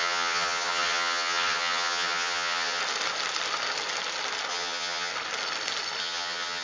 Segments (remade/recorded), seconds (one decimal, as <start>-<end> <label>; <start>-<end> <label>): 0.0-2.8 remade; 2.8-4.5 recorded; 4.5-5.1 remade; 5.1-6.0 recorded; 6.0-6.6 remade